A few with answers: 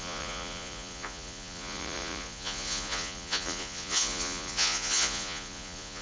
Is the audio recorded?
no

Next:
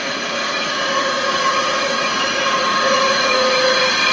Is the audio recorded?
no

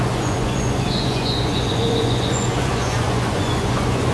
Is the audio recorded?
no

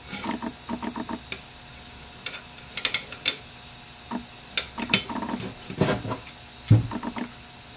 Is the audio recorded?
yes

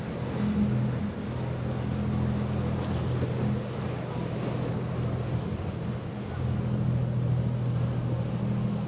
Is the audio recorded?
yes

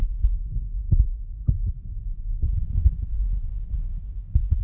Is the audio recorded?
no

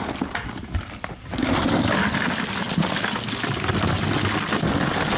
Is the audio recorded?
yes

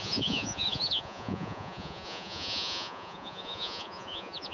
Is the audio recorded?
no